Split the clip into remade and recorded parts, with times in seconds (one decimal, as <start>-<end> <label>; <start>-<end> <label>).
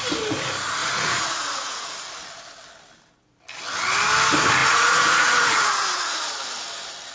0.0-0.8 recorded; 0.8-1.9 remade; 1.9-4.6 recorded; 4.6-6.2 remade; 6.2-7.1 recorded